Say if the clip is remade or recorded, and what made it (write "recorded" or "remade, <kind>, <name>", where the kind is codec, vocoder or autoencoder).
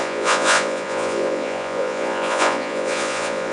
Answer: remade, vocoder, Vocos